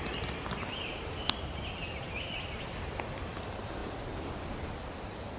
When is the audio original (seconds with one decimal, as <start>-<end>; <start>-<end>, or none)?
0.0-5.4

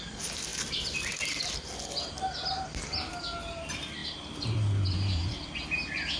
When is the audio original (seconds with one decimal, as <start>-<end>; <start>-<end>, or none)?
0.0-6.2

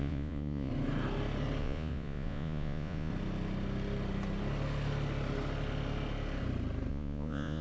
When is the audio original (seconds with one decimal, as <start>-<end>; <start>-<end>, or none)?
0.7-1.6; 3.1-6.9

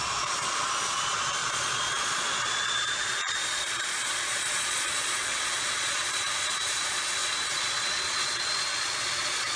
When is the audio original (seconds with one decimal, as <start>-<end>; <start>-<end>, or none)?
none

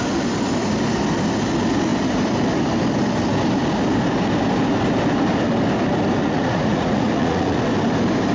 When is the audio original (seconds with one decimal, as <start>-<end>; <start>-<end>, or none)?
0.0-6.2; 7.6-8.3

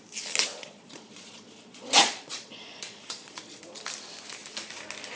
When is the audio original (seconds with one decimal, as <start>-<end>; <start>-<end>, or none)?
0.0-0.5; 3.6-5.2